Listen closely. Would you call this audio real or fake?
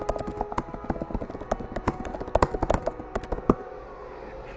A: real